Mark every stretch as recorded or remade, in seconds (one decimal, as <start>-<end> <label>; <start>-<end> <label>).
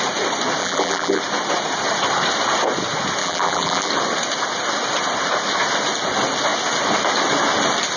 0.0-0.6 recorded; 0.6-1.2 remade; 1.2-3.2 recorded; 3.2-3.9 remade; 3.9-8.0 recorded